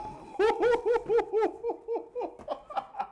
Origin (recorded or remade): recorded